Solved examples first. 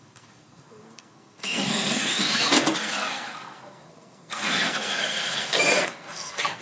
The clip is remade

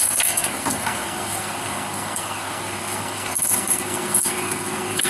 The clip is remade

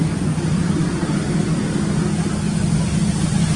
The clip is recorded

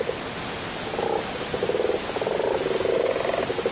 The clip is recorded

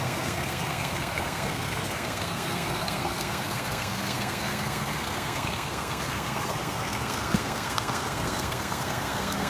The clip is remade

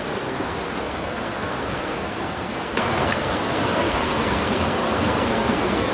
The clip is remade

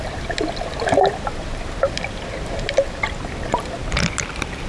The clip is recorded